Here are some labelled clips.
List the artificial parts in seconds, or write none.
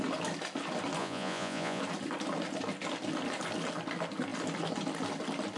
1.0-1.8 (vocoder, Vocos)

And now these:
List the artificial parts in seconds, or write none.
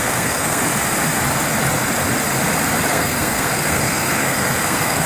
0.0-0.6 (codec, SNAC); 2.9-5.1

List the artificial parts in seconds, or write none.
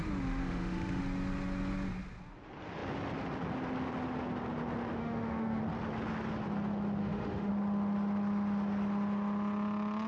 0.4-1.0 (autoencoder, DAC-VAE); 5.0-5.6; 7.0-7.5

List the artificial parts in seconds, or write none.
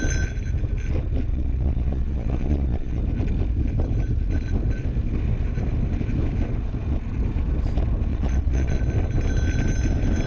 1.3-3.0 (vocoder, Vocos); 8.1-8.8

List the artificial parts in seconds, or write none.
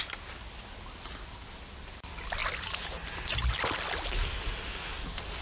none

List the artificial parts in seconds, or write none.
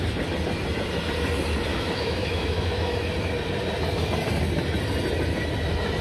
1.7-3.0 (autoencoder, DAC-VAE)